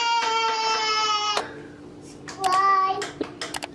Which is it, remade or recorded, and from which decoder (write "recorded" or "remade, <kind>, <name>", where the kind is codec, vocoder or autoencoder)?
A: recorded